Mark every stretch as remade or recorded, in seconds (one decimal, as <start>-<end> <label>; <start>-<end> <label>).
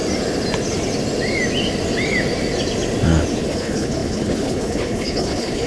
0.0-3.4 recorded; 3.4-5.7 remade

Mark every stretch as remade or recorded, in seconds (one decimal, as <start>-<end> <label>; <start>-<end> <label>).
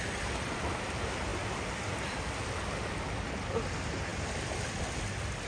0.0-5.5 recorded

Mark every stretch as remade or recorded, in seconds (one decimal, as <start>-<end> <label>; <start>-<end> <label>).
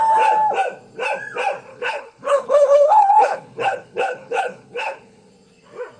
0.0-1.7 recorded; 1.7-5.3 remade; 5.3-6.0 recorded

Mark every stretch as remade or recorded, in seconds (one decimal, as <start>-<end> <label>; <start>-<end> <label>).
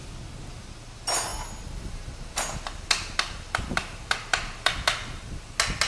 0.0-5.9 recorded